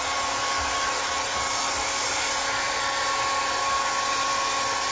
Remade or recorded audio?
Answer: recorded